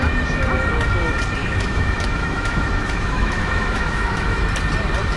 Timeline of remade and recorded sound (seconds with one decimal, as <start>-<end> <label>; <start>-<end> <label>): 0.0-1.4 recorded; 1.4-4.5 remade; 4.5-5.2 recorded